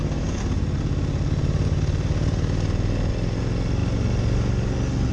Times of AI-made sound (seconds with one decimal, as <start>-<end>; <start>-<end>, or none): none